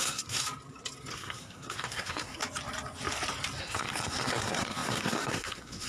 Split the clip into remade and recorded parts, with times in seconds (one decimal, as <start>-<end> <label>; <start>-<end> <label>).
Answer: 0.0-0.4 remade; 0.4-1.1 recorded; 1.1-2.4 remade; 2.4-3.6 recorded; 3.6-5.9 remade